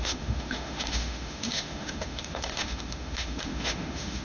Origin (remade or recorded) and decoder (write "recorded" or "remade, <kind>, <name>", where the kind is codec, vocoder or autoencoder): remade, autoencoder, DAC-VAE